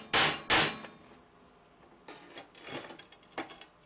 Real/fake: real